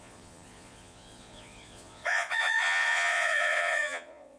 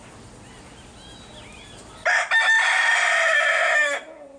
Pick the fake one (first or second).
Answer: first